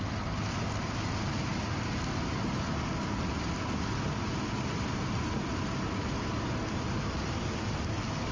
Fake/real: real